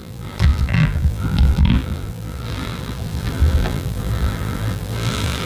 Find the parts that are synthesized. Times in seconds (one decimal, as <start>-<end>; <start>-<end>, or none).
0.0-5.5